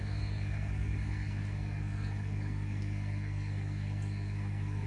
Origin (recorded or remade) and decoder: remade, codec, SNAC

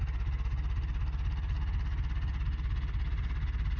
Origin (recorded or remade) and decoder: recorded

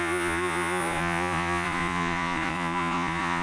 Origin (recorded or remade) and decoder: remade, vocoder, Vocos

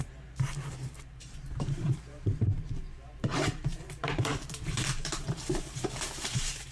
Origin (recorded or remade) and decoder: remade, vocoder, BigVGAN v2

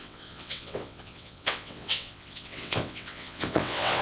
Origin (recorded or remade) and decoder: remade, vocoder, WaveNeXt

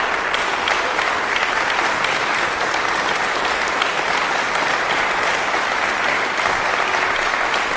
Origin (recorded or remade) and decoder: recorded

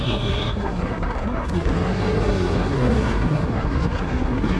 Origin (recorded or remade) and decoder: remade, codec, SNAC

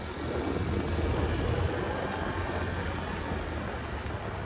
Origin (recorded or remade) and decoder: recorded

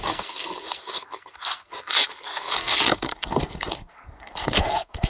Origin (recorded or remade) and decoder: remade, codec, SNAC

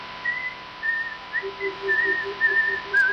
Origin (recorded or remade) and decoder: remade, vocoder, BigVGAN v2